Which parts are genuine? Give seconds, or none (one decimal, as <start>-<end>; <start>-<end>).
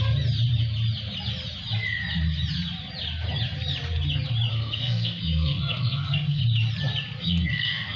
0.0-4.5; 6.4-7.2